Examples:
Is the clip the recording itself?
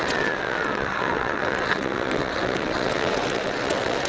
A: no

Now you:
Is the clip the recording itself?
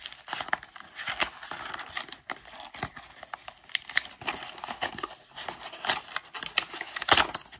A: yes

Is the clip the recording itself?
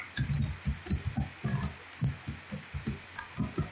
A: yes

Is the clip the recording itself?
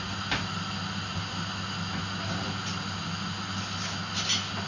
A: yes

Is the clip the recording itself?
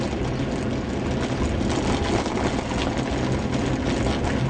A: yes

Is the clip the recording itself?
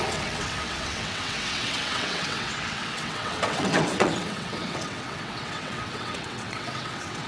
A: no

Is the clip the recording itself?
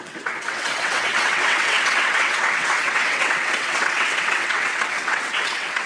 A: no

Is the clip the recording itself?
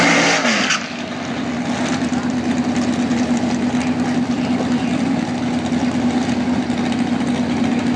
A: yes